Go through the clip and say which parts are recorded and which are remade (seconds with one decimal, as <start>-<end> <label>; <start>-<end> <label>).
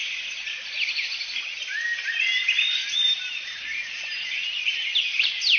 0.0-2.9 recorded; 2.9-5.6 remade